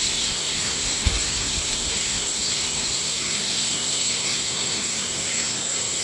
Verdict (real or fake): fake